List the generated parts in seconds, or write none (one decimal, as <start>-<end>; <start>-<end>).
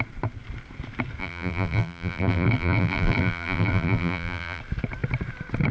1.2-4.6